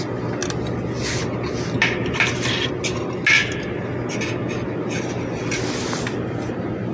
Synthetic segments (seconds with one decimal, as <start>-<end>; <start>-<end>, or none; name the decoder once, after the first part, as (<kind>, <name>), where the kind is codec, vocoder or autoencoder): none